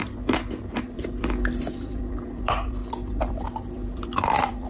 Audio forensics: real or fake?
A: fake